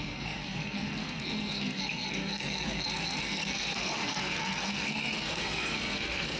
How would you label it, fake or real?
fake